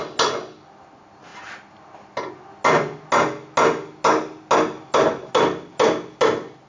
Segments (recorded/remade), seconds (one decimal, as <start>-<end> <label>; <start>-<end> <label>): 0.0-6.7 recorded